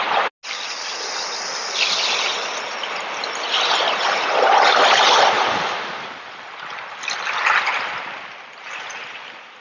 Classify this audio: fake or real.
real